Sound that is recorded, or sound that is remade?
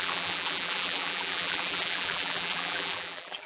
remade